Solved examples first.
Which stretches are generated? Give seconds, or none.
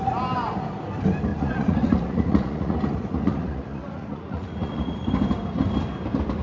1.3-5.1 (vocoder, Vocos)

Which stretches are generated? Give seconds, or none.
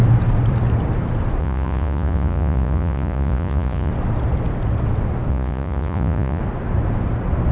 1.4-3.9 (vocoder, Vocos); 5.3-6.4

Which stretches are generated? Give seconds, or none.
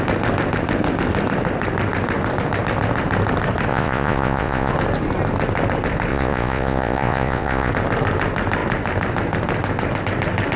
3.7-4.7 (vocoder, Vocos); 6.1-7.7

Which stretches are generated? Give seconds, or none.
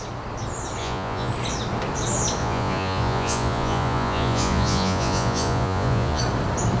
0.8-1.3 (vocoder, Vocos); 2.4-6.2